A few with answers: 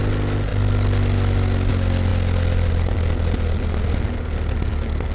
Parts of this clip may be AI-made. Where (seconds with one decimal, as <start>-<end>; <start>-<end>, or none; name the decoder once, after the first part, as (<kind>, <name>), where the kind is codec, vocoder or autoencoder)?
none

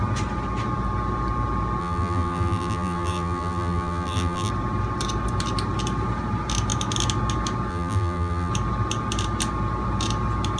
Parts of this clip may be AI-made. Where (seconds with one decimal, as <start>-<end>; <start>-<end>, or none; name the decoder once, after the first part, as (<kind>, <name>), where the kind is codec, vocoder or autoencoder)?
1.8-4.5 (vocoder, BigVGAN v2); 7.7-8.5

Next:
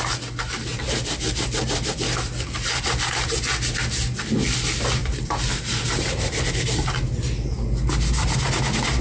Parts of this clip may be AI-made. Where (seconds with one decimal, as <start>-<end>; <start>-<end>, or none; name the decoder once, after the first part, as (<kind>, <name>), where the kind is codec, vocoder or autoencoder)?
0.7-1.7 (vocoder, BigVGAN v2); 5.0-6.5